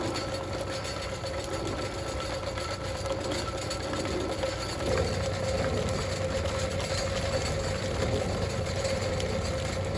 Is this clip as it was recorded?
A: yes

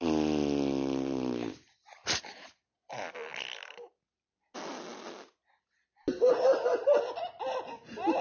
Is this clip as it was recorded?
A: yes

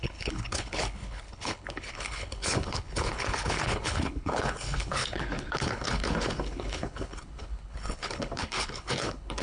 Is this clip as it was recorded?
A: no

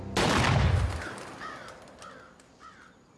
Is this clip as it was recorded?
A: yes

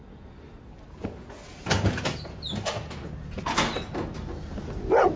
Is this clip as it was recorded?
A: yes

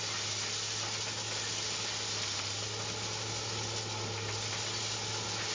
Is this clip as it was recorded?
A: yes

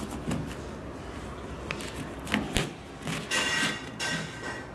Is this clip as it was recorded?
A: yes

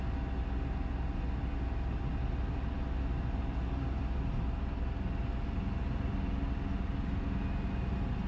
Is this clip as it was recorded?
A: yes